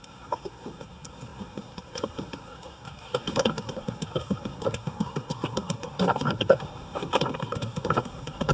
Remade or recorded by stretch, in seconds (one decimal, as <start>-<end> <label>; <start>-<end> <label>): 0.0-8.5 remade